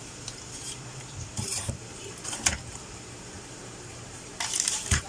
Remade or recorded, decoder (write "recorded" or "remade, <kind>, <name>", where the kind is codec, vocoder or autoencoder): remade, vocoder, BigVGAN v2